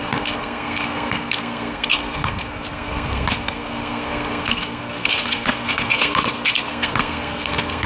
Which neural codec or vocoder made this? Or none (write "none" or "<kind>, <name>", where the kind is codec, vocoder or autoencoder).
codec, SNAC